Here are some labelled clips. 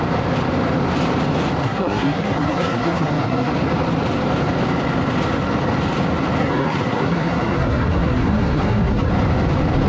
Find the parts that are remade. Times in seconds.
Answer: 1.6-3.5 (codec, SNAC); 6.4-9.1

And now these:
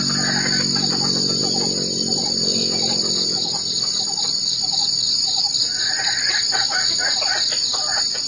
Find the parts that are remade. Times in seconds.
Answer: none

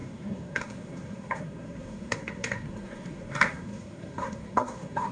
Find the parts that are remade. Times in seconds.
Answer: 0.0-5.1 (codec, SNAC)